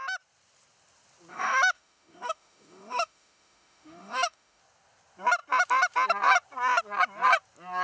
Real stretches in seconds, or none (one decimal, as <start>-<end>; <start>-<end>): 0.0-1.3; 4.6-7.8